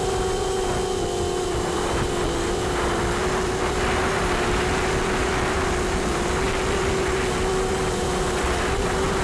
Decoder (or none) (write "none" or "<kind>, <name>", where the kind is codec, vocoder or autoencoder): vocoder, BigVGAN v2